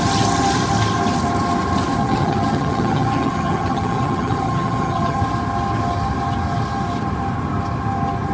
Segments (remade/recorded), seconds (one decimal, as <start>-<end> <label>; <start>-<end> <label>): 0.0-2.0 recorded; 2.0-5.2 remade; 5.2-8.3 recorded